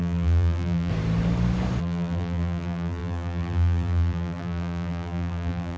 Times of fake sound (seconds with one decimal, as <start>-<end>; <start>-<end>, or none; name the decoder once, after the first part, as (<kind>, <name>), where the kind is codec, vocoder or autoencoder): 0.0-0.9 (vocoder, BigVGAN v2); 1.8-5.8